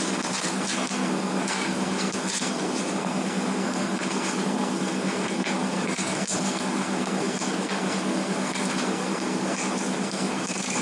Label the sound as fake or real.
fake